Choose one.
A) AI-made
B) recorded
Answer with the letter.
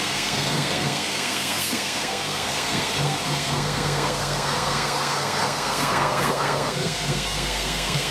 A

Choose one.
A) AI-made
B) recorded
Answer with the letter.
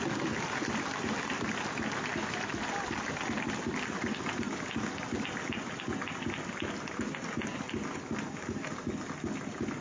B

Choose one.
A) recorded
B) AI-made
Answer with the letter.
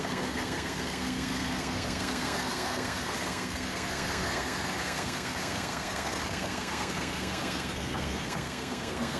B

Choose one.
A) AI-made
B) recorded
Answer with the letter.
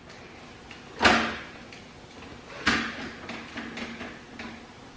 B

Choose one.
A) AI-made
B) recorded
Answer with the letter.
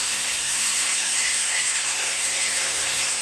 A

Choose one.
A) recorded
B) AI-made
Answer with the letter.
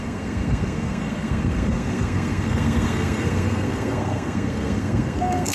B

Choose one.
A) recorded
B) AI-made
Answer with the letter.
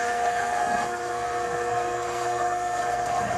B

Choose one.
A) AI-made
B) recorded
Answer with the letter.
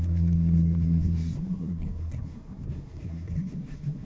A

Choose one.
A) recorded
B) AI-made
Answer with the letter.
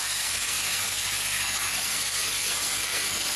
B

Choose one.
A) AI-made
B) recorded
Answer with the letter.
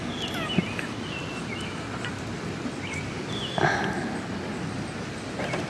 B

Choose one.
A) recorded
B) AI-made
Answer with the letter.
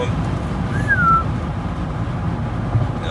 A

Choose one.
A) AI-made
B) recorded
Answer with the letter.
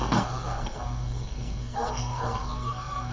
A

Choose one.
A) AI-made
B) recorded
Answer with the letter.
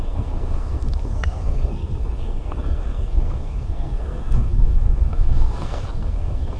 A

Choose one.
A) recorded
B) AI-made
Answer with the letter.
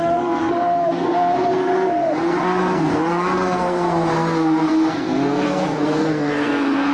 B